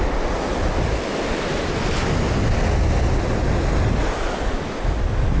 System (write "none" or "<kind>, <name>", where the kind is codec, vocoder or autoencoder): none